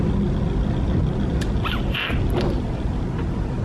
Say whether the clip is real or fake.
real